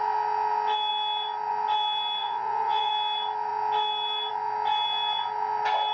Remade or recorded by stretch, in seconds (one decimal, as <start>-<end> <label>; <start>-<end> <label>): 0.0-2.2 recorded; 2.2-2.9 remade; 2.9-5.9 recorded